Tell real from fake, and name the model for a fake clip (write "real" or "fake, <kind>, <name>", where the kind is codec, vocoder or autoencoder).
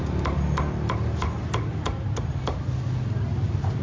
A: real